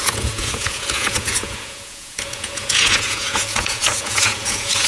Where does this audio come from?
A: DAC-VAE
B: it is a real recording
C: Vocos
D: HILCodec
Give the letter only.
C